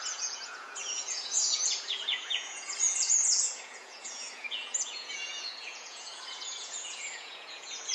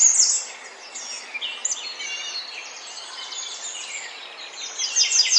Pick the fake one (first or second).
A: first